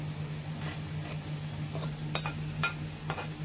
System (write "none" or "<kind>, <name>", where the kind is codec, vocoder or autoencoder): none